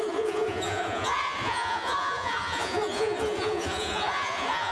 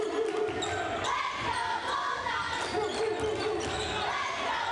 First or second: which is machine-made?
first